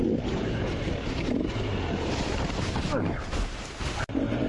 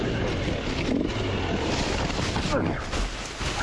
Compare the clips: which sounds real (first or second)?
second